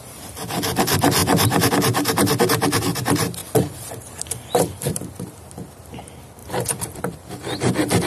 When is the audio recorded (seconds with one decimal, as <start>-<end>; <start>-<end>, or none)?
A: 0.0-1.2; 1.7-3.4; 5.3-6.4; 7.0-8.1